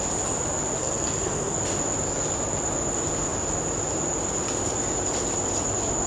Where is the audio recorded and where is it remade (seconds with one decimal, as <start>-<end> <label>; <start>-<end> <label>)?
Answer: 0.0-0.8 recorded; 0.8-1.6 remade; 1.6-6.1 recorded